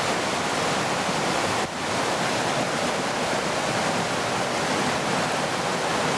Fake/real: real